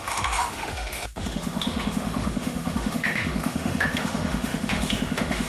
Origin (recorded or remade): remade